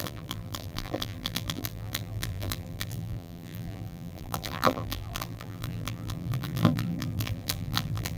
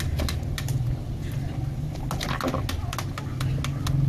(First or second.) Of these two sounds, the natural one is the second